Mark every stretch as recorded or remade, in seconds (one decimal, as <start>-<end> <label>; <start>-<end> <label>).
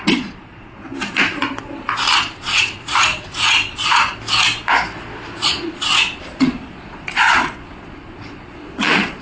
0.0-0.9 remade; 0.9-2.2 recorded; 2.2-4.1 remade; 4.1-5.4 recorded; 5.4-9.2 remade